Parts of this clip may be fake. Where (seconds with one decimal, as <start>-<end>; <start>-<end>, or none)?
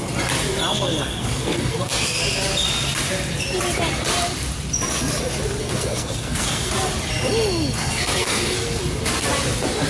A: 0.7-2.2; 5.6-6.9; 7.8-8.8